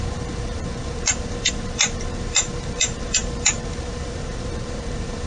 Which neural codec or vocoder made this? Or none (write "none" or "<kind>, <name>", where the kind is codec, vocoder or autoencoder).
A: vocoder, BigVGAN v2